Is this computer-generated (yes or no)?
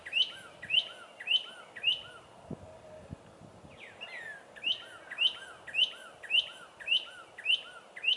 no